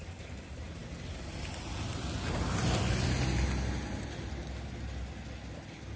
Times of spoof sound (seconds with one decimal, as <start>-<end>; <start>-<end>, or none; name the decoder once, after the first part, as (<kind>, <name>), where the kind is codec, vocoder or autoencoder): none